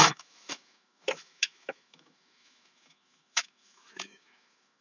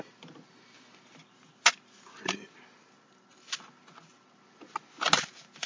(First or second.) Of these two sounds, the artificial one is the first